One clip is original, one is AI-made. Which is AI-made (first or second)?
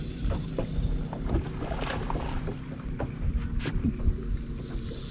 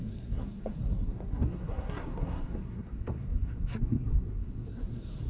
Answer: second